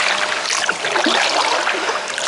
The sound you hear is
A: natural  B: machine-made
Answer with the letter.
A